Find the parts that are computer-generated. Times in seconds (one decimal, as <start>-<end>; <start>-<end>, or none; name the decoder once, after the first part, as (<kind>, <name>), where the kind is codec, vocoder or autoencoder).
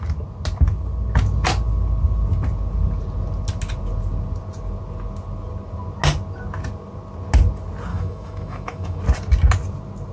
7.9-9.0 (autoencoder, DAC-VAE)